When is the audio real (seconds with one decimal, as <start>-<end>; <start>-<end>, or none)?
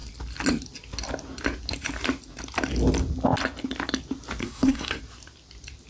0.0-4.4; 5.0-5.9